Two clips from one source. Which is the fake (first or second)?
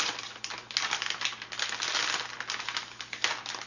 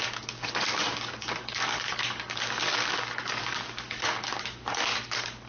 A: second